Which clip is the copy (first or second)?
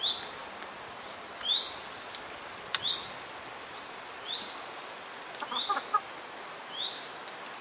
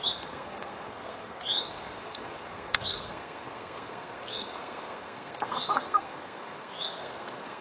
second